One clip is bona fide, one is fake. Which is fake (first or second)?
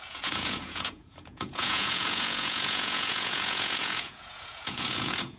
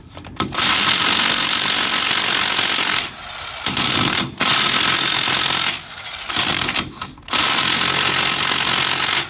first